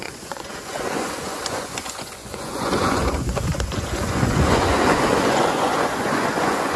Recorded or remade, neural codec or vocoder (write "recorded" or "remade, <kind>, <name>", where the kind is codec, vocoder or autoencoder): remade, vocoder, Vocos